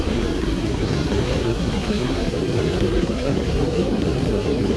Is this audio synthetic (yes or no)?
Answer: yes